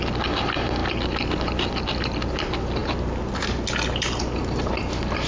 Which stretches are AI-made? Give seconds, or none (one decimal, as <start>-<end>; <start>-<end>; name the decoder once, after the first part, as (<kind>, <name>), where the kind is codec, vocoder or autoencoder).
none